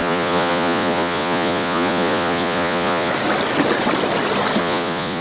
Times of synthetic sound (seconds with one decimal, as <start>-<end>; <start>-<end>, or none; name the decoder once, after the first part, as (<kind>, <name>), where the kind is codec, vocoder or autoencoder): 0.0-3.1 (vocoder, Vocos); 4.6-5.2